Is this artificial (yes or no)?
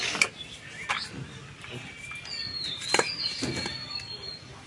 no